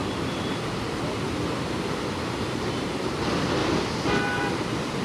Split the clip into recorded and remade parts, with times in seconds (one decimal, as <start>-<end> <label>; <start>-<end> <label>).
0.0-3.6 recorded; 3.6-4.1 remade; 4.1-5.0 recorded